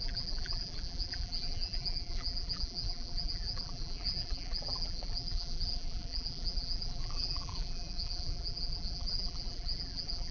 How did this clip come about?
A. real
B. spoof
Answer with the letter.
B